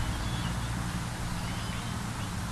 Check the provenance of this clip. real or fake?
real